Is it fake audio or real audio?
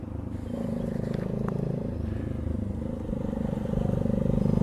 real